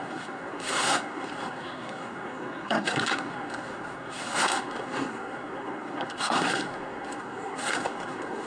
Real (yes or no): no